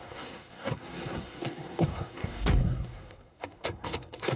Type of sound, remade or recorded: remade